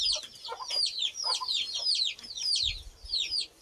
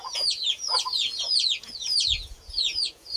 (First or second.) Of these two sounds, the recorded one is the first